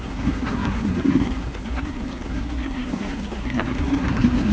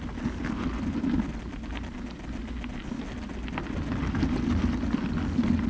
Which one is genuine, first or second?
second